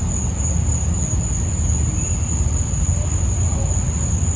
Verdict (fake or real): real